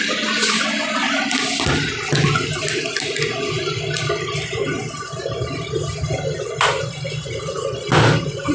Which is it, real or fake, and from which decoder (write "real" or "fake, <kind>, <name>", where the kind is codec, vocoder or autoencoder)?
real